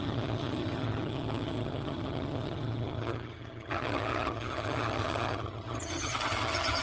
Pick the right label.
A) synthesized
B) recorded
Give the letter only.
A